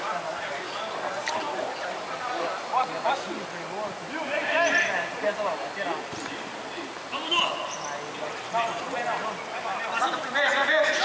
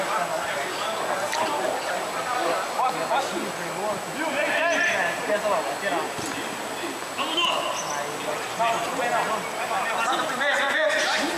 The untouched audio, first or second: second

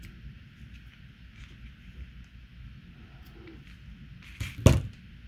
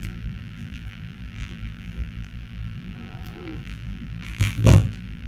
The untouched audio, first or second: first